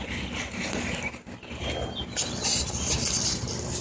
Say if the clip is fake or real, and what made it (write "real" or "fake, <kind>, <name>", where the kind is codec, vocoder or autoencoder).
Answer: real